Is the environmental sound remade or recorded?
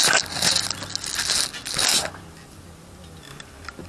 recorded